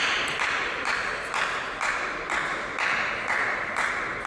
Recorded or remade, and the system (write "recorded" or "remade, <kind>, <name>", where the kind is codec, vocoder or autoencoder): recorded